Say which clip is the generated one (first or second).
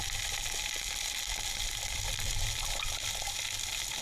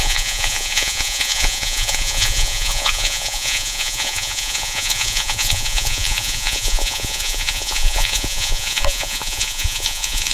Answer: second